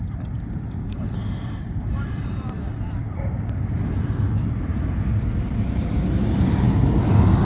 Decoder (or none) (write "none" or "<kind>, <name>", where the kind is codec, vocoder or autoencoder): none